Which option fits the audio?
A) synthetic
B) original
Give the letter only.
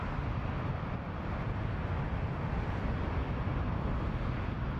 B